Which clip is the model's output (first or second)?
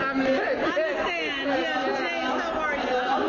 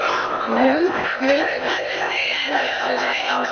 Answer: second